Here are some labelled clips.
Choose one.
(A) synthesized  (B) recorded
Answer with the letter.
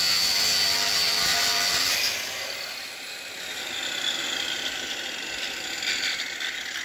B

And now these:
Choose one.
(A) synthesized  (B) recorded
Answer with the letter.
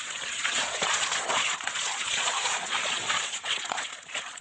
A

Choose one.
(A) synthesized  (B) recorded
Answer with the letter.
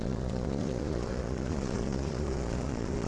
A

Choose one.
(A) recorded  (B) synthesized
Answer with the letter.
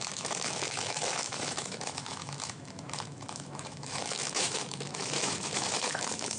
B